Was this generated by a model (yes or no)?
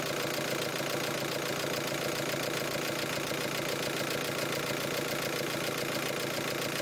no